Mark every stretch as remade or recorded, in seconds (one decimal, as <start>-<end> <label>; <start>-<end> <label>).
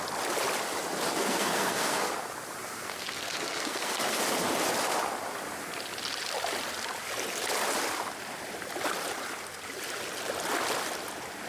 0.0-1.1 recorded; 1.1-2.1 remade; 2.1-2.6 recorded; 2.6-4.2 remade; 4.2-11.5 recorded